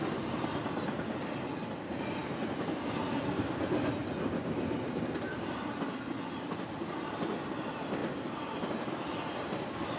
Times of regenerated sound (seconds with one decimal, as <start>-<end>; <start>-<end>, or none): none